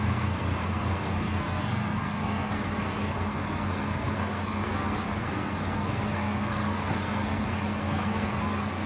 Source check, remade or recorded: remade